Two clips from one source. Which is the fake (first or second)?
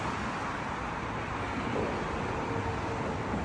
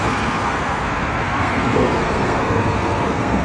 second